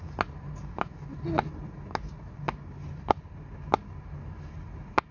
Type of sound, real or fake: real